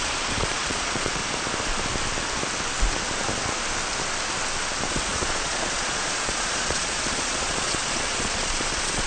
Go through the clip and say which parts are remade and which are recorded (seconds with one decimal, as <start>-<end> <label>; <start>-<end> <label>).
0.0-1.2 remade; 1.2-4.9 recorded; 4.9-9.1 remade